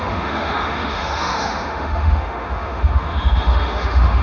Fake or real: fake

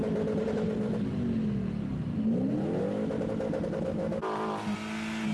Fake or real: real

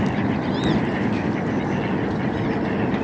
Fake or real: real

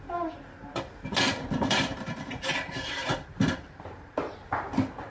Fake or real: fake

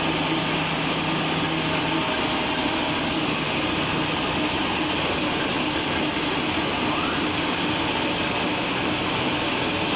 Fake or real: real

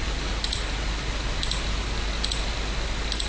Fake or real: real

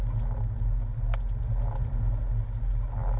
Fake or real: real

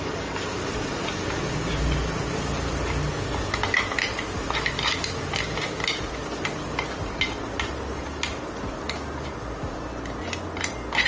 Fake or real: real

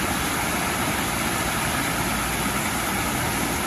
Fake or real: real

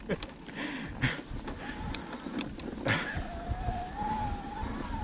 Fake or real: real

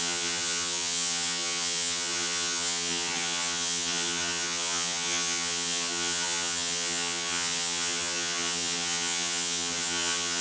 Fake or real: fake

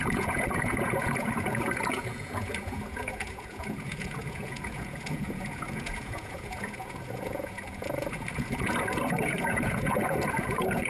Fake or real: fake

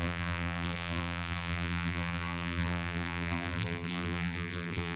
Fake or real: fake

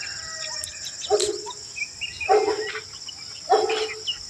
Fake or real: real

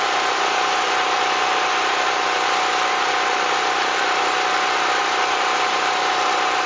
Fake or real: real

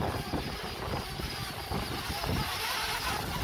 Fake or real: real